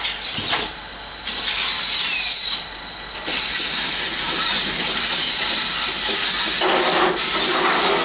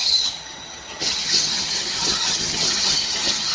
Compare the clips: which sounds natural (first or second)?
first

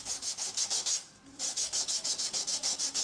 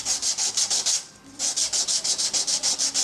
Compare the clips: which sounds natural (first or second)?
second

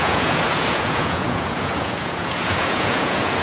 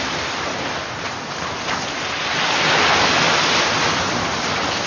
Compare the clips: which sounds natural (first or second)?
second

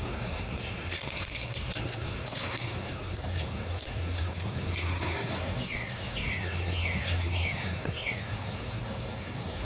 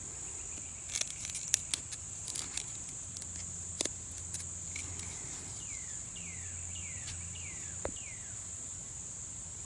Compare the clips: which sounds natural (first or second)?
second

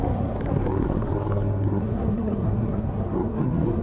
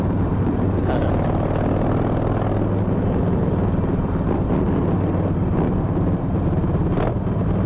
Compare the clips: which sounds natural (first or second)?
second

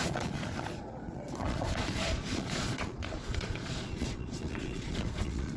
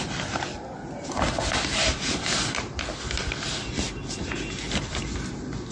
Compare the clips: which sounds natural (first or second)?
second